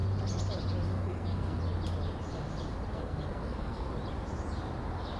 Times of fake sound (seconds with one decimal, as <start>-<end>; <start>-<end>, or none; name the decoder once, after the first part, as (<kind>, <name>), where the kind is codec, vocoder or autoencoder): 0.9-1.6 (codec, SNAC); 2.9-3.9